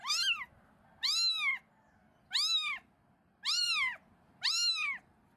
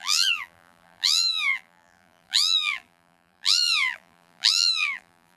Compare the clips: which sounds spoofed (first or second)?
second